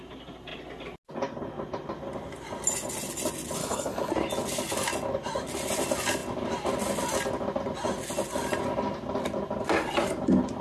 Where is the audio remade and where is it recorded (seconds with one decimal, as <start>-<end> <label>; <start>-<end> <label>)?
0.0-3.6 recorded; 3.6-4.1 remade; 4.1-10.6 recorded